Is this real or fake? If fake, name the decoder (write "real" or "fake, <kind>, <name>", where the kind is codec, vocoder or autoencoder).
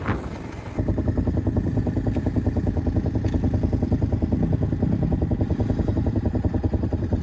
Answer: real